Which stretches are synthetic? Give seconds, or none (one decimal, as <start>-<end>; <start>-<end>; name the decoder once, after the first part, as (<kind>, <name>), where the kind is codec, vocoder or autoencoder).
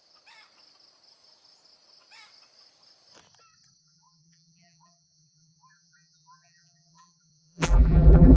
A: 3.8-8.4 (vocoder, BigVGAN v2)